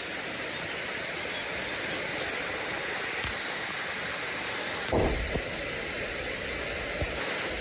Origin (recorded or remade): recorded